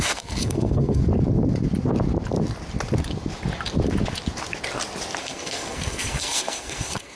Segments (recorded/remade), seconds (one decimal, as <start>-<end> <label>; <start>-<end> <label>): 0.0-1.0 remade; 1.0-5.2 recorded; 5.2-7.2 remade

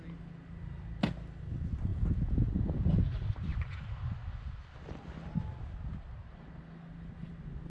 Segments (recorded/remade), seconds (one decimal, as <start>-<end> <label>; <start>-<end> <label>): 0.0-1.9 recorded; 1.9-2.9 remade; 2.9-7.7 recorded

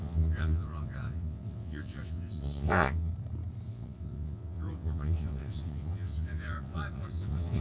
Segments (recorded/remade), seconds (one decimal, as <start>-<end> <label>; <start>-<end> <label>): 0.0-3.1 remade; 3.1-3.7 recorded; 3.7-7.6 remade

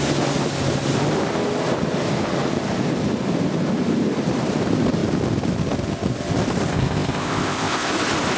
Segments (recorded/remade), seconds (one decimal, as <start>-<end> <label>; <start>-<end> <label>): 0.0-6.7 recorded; 6.7-7.9 remade; 7.9-8.4 recorded

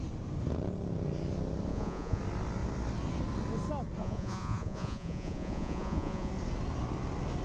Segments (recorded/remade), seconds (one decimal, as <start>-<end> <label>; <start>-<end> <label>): 0.0-1.7 recorded; 1.7-2.2 remade; 2.2-4.0 recorded; 4.0-6.3 remade; 6.3-7.4 recorded